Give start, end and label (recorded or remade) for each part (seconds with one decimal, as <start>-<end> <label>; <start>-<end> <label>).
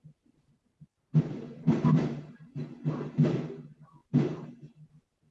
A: 0.0-2.6 remade; 2.6-3.5 recorded; 3.5-5.3 remade